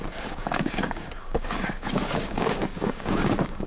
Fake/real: fake